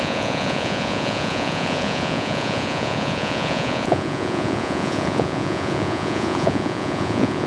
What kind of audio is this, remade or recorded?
remade